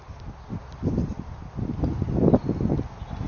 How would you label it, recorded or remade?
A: recorded